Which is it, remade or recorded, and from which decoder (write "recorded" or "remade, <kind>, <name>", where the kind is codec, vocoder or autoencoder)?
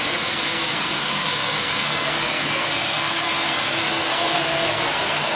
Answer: remade, codec, SNAC